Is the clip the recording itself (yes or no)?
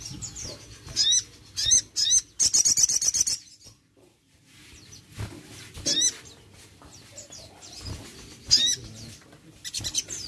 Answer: yes